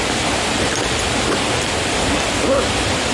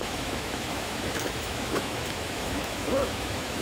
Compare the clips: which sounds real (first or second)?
first